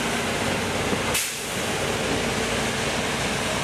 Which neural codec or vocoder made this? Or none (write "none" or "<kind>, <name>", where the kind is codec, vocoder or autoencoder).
none